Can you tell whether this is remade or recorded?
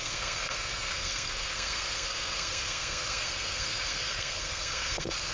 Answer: remade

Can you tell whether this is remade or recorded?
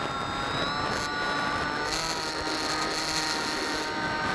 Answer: recorded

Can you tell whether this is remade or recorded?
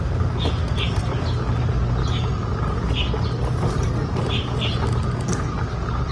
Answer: recorded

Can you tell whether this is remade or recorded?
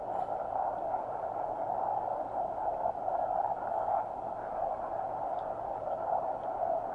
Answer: recorded